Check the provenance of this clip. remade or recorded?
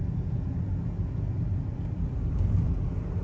recorded